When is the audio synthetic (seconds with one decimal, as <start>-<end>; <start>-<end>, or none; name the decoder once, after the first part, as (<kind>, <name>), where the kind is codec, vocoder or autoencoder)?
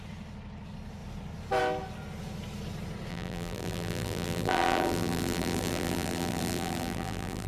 3.1-7.5 (vocoder, BigVGAN v2)